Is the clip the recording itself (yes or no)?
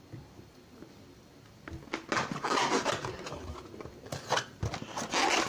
yes